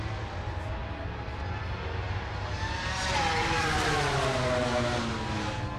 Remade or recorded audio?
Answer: recorded